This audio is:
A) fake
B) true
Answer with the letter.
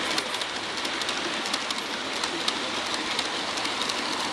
B